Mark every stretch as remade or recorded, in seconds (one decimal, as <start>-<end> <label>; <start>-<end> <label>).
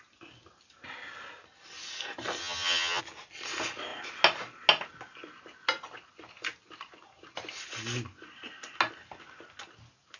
0.0-2.4 recorded; 2.4-3.0 remade; 3.0-10.2 recorded